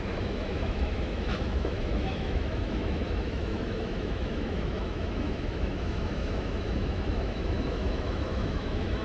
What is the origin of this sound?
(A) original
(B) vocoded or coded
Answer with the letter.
B